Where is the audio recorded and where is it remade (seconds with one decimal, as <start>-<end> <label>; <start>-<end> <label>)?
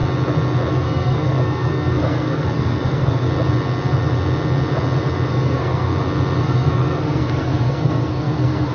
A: 0.0-0.7 recorded; 0.7-3.3 remade; 3.3-5.3 recorded; 5.3-5.9 remade; 5.9-6.4 recorded; 6.4-8.7 remade